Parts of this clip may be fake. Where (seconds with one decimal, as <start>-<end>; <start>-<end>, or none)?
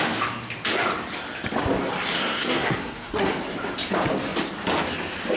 2.2-3.3